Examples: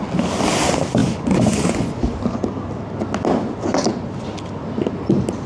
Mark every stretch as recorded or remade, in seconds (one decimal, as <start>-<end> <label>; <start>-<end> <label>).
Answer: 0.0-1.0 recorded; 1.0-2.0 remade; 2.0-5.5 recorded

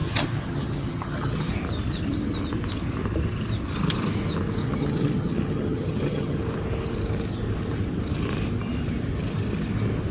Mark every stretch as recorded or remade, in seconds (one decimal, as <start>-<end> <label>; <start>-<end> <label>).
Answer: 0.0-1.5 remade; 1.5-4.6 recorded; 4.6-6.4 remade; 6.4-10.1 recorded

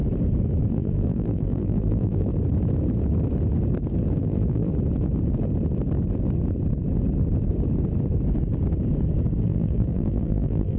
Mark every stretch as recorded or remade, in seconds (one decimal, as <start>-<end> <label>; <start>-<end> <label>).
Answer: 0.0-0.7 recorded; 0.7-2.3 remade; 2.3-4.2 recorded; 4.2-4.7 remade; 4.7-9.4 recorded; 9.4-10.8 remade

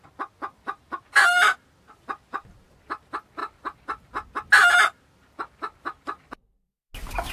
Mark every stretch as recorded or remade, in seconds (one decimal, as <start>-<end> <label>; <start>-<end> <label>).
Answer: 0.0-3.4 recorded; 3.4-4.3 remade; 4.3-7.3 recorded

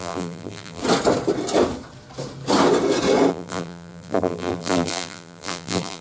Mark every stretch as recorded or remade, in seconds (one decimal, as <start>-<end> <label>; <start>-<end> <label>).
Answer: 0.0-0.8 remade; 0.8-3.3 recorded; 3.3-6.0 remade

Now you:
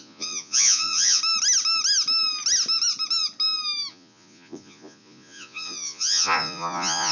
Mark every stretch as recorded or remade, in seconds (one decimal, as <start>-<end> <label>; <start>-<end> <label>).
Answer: 0.0-1.2 remade; 1.2-3.9 recorded; 3.9-7.1 remade